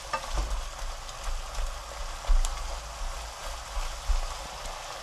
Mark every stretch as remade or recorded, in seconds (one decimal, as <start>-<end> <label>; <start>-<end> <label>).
0.0-5.0 recorded